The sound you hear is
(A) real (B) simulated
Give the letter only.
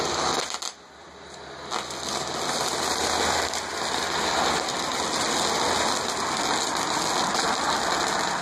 A